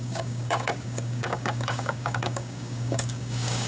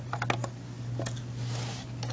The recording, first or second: second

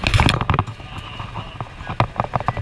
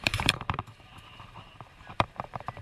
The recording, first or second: first